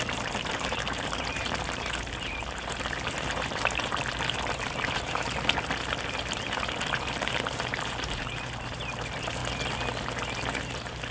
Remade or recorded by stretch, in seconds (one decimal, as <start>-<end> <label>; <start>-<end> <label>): 0.0-9.4 remade; 9.4-10.5 recorded; 10.5-11.1 remade